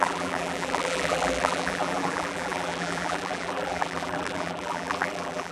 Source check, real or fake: fake